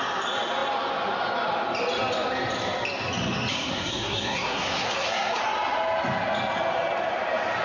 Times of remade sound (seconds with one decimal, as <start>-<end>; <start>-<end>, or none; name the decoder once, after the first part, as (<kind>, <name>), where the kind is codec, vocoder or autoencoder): 3.5-5.4 (codec, SNAC)